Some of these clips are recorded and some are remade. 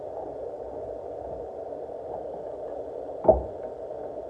recorded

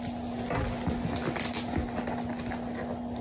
recorded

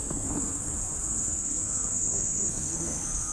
remade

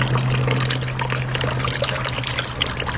recorded